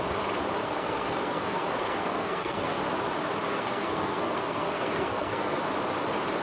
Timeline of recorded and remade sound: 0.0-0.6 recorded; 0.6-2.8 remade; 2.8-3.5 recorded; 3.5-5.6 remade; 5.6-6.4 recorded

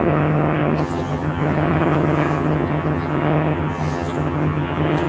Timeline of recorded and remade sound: 0.0-5.1 remade

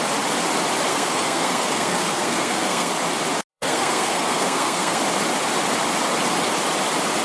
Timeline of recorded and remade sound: 0.0-0.9 recorded; 0.9-2.9 remade; 2.9-3.5 recorded; 3.5-5.0 remade; 5.0-7.2 recorded

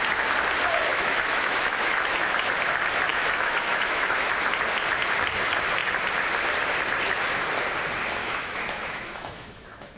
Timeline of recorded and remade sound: 0.0-0.9 recorded; 0.9-2.5 remade; 2.5-3.1 recorded; 3.1-4.3 remade; 4.3-8.2 recorded; 8.2-10.0 remade

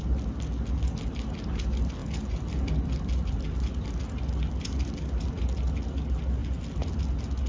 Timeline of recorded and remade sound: 0.0-7.5 recorded

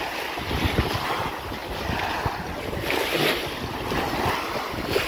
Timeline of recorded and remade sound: 0.0-5.1 recorded

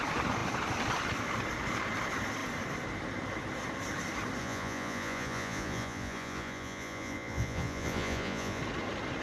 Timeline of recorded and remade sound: 0.0-4.4 recorded; 4.4-8.6 remade; 8.6-9.2 recorded